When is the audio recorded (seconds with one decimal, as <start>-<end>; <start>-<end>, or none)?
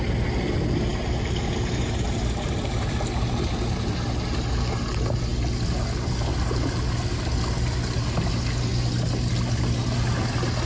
0.0-10.7